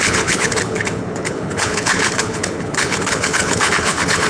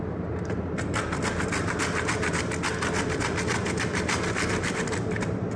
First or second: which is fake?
first